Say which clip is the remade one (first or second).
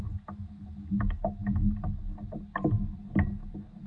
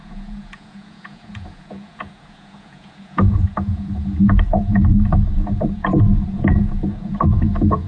second